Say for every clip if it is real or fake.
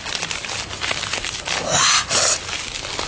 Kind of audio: real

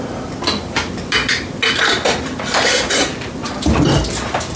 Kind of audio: real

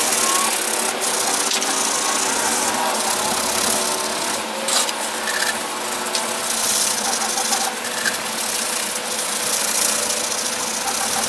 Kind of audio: real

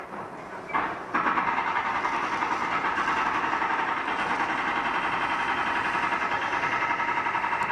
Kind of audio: real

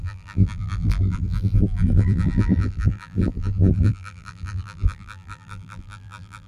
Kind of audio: fake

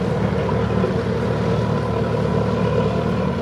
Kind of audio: real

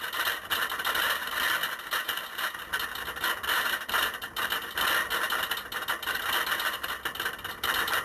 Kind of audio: real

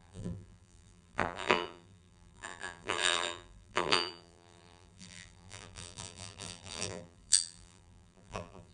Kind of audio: fake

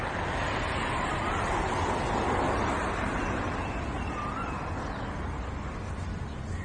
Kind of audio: real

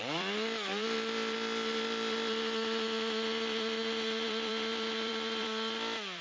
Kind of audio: fake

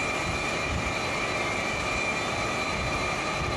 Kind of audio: fake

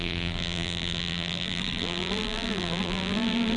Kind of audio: fake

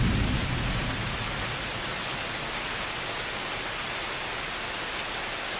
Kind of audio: real